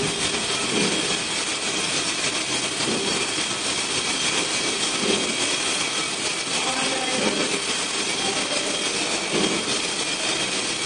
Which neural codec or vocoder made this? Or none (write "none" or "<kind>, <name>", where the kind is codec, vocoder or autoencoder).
none